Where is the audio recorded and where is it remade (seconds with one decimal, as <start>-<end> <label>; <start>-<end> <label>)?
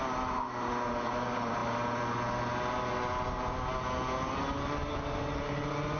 0.0-6.0 recorded